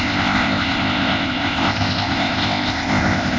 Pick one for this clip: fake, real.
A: fake